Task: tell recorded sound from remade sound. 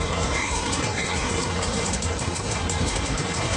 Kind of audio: remade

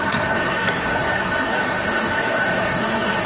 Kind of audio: remade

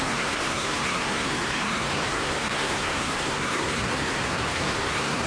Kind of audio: remade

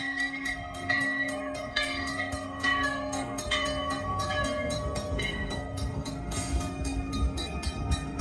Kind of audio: remade